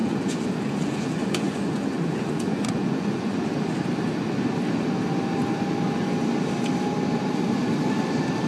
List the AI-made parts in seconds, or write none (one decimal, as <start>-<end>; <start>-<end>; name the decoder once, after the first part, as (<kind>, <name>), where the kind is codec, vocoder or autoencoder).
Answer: 0.0-3.4 (vocoder, Vocos)